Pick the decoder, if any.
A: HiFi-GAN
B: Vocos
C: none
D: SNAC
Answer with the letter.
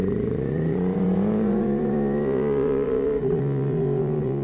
B